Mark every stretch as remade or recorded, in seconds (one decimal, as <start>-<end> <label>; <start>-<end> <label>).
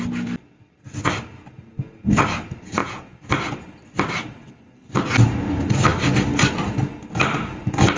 0.0-2.8 recorded; 2.8-3.3 remade; 3.3-8.0 recorded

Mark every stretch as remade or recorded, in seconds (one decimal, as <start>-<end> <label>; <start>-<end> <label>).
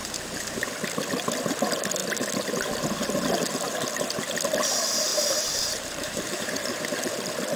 0.0-0.7 remade; 0.7-5.1 recorded; 5.1-7.0 remade; 7.0-7.6 recorded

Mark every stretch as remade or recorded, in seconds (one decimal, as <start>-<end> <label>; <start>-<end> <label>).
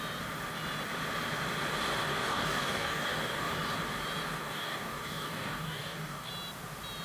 0.0-2.1 recorded; 2.1-3.5 remade; 3.5-4.4 recorded; 4.4-6.3 remade; 6.3-7.0 recorded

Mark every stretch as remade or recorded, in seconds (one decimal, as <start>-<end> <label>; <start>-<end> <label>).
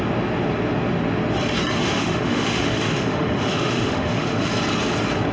0.0-1.8 recorded; 1.8-4.5 remade; 4.5-5.3 recorded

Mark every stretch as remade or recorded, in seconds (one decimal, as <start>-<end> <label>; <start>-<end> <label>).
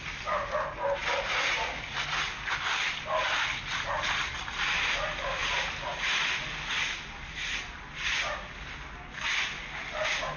0.0-10.4 recorded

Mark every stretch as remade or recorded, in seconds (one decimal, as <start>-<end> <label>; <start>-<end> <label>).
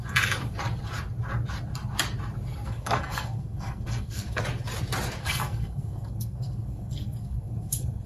0.0-2.5 recorded; 2.5-4.4 remade; 4.4-5.2 recorded; 5.2-8.1 remade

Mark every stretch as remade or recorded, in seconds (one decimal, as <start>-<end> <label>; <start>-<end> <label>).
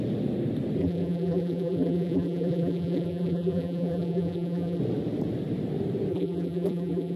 0.0-0.8 recorded; 0.8-4.8 remade; 4.8-6.1 recorded; 6.1-7.2 remade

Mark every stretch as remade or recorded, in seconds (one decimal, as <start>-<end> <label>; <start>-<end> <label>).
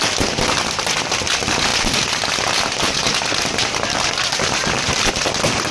0.0-5.7 recorded